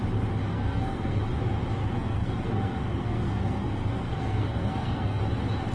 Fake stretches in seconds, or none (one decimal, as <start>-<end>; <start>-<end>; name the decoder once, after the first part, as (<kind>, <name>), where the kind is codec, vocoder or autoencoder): 0.4-1.2 (codec, SNAC); 1.8-5.2